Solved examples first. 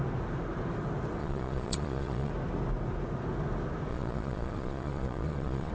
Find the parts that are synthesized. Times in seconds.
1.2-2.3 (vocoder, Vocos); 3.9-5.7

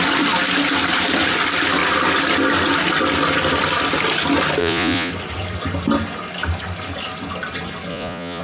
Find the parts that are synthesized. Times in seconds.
4.6-5.1 (vocoder, Vocos); 7.9-8.4

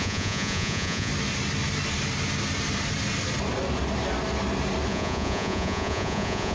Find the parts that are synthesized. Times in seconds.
0.0-1.1 (vocoder, Vocos); 4.9-6.5

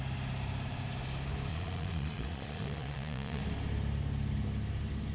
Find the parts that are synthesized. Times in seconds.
1.5-3.4 (vocoder, Vocos)

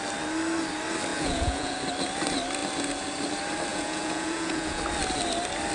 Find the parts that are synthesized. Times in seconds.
1.1-1.8 (vocoder, Vocos); 3.7-4.8

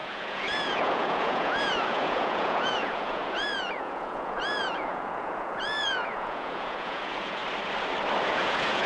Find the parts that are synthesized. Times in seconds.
0.0-7.4 (vocoder, Vocos); 8.2-8.9

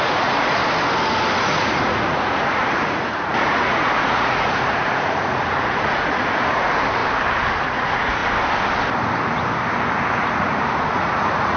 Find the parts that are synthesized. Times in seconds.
0.0-0.6 (vocoder, Vocos); 1.4-7.0; 7.6-8.2; 10.2-11.6

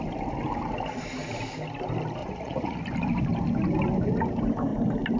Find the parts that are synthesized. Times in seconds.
2.2-2.8 (vocoder, Vocos)